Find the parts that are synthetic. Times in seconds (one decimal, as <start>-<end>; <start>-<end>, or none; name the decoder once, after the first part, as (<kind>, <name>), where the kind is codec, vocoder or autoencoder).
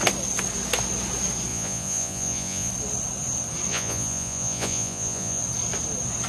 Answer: 1.5-2.7 (vocoder, Vocos); 3.7-5.4